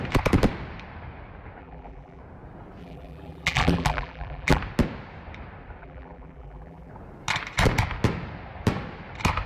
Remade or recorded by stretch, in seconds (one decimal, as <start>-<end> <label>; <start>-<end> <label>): 0.0-1.6 recorded; 1.6-2.2 remade; 2.2-2.8 recorded; 2.8-4.6 remade; 4.6-5.8 recorded; 5.8-6.9 remade; 6.9-9.5 recorded